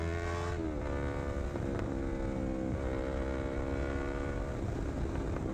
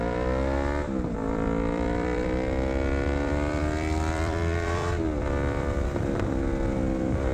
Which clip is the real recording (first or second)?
first